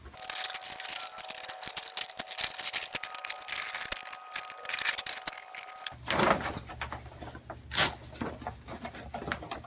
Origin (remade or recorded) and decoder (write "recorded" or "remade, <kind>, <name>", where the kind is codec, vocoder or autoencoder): recorded